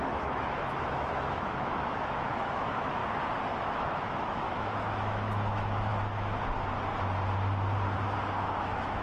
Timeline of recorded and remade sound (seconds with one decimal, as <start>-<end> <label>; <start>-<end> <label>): 0.0-3.0 remade; 3.0-3.6 recorded; 3.6-5.9 remade; 5.9-8.6 recorded; 8.6-9.0 remade